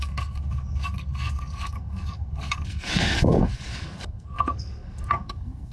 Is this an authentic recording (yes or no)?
no